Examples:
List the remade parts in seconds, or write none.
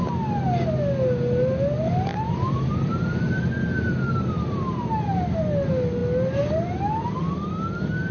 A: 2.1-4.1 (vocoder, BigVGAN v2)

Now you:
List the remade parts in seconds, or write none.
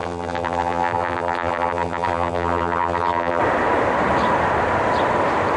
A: 0.0-3.4 (vocoder, BigVGAN v2)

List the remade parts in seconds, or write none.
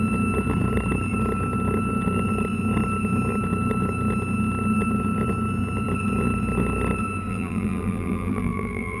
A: 7.3-9.0 (vocoder, BigVGAN v2)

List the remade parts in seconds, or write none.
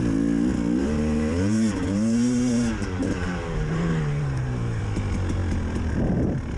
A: 0.8-4.8 (vocoder, BigVGAN v2)